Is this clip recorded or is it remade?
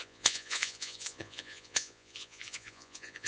remade